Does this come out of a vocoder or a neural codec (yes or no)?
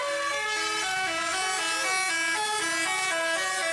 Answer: no